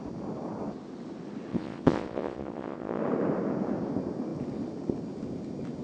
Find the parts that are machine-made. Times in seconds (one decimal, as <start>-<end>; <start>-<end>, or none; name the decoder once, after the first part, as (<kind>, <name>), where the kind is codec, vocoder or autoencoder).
1.5-3.0 (vocoder, Vocos)